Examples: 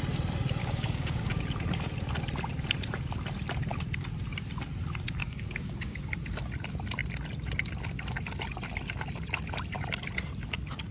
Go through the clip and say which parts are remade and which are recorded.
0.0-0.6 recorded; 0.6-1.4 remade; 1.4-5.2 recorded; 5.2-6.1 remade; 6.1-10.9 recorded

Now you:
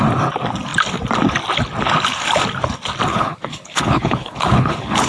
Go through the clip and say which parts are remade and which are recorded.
0.0-3.1 recorded; 3.1-5.1 remade

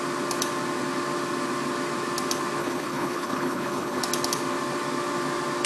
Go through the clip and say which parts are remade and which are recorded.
0.0-2.6 recorded; 2.6-4.0 remade; 4.0-5.7 recorded

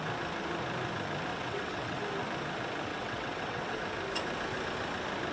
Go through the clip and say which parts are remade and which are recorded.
0.0-1.3 recorded; 1.3-2.0 remade; 2.0-2.9 recorded; 2.9-3.8 remade; 3.8-5.3 recorded

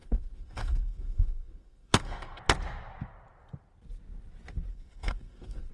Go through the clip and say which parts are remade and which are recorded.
0.0-2.4 remade; 2.4-4.7 recorded; 4.7-5.7 remade